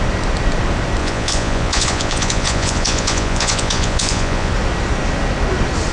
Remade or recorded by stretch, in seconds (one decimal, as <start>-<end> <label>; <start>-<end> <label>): 0.0-1.0 recorded; 1.0-4.5 remade; 4.5-5.9 recorded